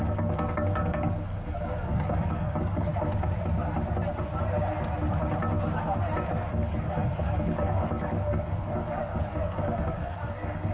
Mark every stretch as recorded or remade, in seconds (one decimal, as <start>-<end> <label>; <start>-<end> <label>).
0.0-2.9 remade; 2.9-6.5 recorded; 6.5-10.7 remade